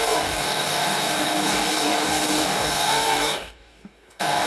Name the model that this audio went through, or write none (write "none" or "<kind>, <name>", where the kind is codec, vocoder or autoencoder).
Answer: codec, DAC